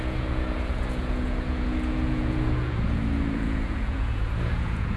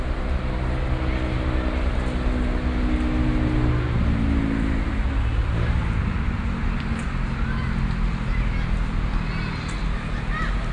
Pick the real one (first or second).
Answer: second